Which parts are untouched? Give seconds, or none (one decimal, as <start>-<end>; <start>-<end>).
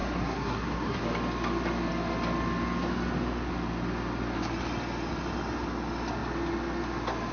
1.0-7.3